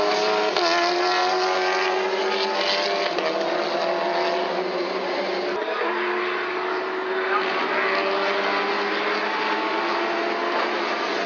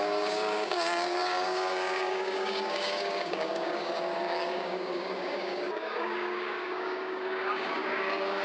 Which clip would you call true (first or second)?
first